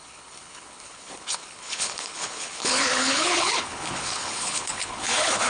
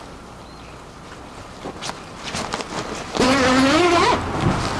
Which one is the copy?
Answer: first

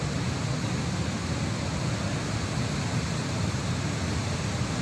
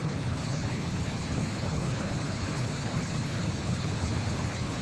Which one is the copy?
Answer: second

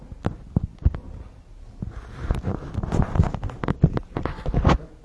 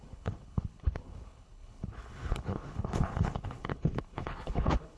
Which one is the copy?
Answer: second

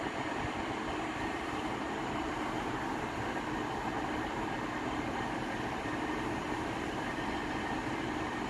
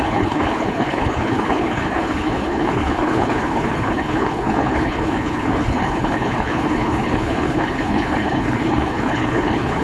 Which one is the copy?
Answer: second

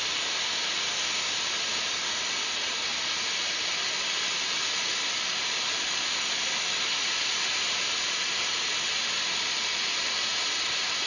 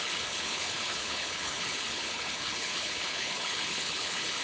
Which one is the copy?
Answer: second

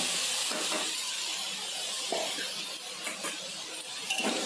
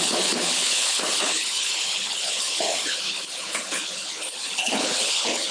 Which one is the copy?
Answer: second